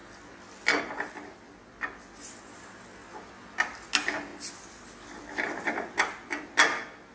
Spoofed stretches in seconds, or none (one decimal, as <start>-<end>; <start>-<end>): none